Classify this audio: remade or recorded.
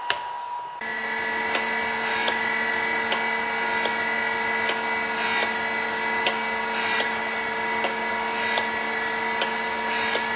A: recorded